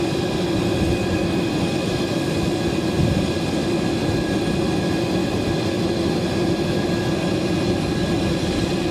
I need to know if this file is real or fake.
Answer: real